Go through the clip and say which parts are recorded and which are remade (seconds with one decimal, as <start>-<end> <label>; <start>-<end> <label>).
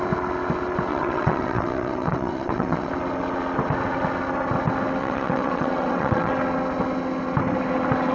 0.0-0.9 recorded; 0.9-2.9 remade; 2.9-5.0 recorded; 5.0-6.3 remade; 6.3-8.1 recorded